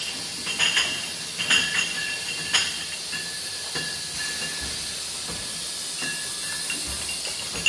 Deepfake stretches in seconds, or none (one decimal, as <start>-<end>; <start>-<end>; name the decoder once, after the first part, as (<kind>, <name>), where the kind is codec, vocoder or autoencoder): none